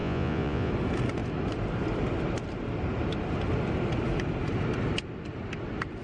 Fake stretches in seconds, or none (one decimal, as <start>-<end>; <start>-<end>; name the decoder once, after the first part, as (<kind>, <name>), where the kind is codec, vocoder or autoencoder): 0.0-0.7 (vocoder, Vocos)